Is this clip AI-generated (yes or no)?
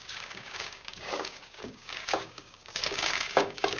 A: yes